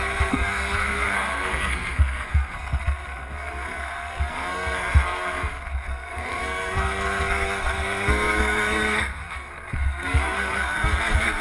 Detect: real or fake fake